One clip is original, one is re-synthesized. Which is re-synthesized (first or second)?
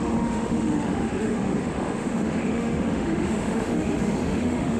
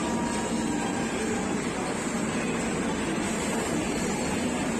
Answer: first